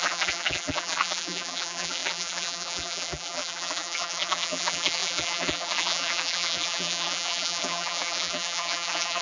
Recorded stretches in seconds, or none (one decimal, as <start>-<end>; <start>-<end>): none

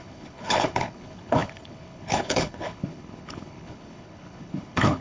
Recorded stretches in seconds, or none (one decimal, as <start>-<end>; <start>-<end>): none

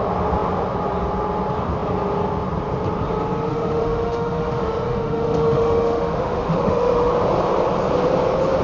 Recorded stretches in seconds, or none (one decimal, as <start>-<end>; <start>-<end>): 0.0-3.5; 7.1-8.6

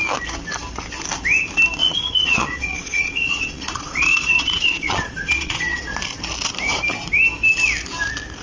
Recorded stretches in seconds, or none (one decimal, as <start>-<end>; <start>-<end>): 0.0-1.8; 6.0-8.4

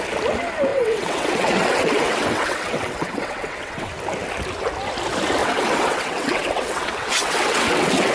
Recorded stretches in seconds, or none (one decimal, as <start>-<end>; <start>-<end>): 0.0-0.7; 3.9-5.4

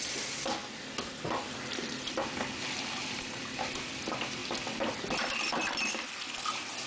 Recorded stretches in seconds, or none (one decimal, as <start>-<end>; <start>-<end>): 0.6-1.5; 4.4-6.4

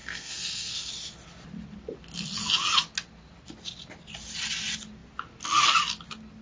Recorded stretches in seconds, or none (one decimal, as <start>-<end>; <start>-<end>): 0.9-6.4

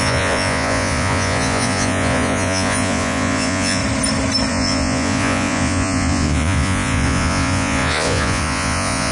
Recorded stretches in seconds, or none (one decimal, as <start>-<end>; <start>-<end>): 3.8-4.5